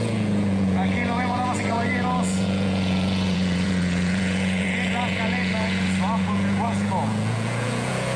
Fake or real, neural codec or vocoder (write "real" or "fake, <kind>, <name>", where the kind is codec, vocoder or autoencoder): fake, vocoder, Vocos